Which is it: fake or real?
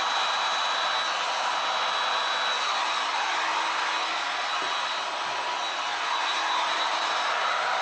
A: real